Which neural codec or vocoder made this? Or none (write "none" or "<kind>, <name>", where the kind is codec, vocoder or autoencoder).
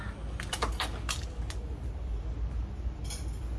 none